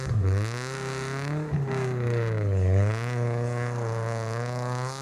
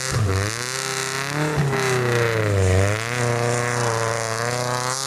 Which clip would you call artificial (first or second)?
first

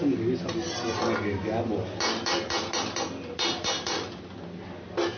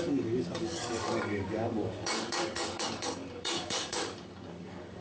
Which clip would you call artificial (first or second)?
second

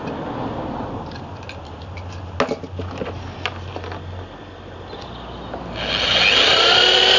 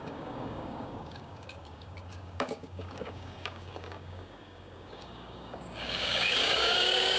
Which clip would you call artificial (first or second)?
second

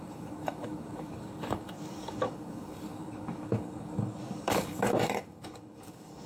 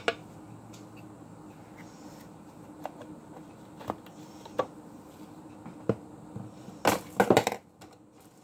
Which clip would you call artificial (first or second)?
first